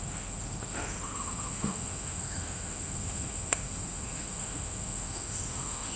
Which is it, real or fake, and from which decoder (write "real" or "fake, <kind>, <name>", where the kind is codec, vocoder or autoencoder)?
fake, autoencoder, DAC-VAE